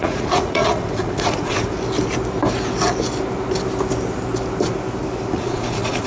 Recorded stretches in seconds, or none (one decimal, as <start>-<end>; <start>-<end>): 1.7-5.3